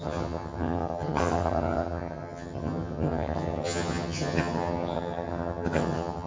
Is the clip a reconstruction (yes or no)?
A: yes